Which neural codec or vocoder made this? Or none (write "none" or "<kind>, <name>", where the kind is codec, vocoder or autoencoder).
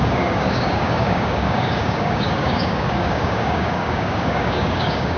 codec, DAC